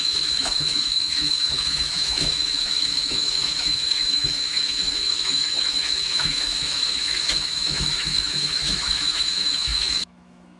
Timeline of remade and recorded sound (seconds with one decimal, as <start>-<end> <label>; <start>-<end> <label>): 0.0-10.6 remade

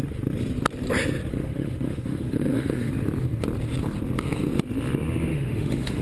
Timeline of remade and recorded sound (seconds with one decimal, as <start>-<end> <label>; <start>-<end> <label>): 0.0-1.3 recorded; 1.3-2.9 remade; 2.9-5.3 recorded; 5.3-6.0 remade

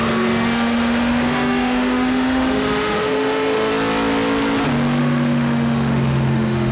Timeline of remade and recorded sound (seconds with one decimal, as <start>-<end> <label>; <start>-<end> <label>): 0.0-3.7 remade; 3.7-5.0 recorded; 5.0-6.7 remade

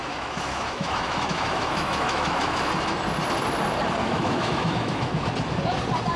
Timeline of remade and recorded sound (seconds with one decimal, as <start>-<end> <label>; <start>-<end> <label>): 0.0-2.7 remade; 2.7-4.0 recorded; 4.0-5.3 remade; 5.3-6.2 recorded

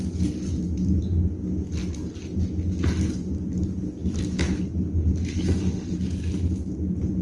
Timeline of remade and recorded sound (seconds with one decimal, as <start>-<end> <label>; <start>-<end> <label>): 0.0-5.3 recorded; 5.3-6.0 remade; 6.0-7.2 recorded

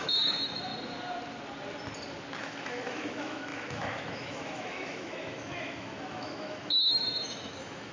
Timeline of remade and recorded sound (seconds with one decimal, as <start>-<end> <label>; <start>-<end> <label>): 0.0-0.7 remade; 0.7-2.4 recorded; 2.4-7.9 remade

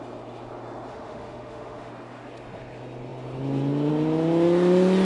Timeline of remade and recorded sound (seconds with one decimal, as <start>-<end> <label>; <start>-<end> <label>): 0.0-0.9 recorded; 0.9-1.9 remade; 1.9-5.0 recorded

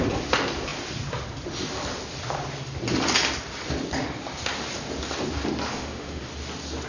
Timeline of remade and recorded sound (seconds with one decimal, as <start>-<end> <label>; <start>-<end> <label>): 0.0-5.7 recorded; 5.7-6.2 remade; 6.2-6.9 recorded